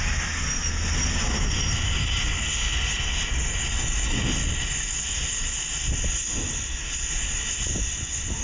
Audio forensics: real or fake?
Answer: real